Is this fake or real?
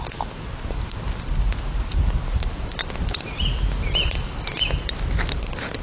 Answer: real